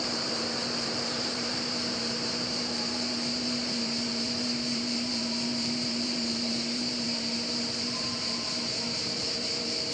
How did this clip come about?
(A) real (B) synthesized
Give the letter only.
B